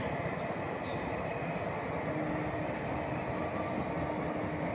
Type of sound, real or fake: real